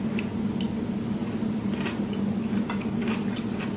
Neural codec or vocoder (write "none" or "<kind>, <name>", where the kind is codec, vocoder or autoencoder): none